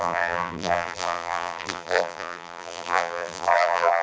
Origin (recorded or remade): remade